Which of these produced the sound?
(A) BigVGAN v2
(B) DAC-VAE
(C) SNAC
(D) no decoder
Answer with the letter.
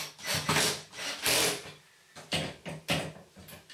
D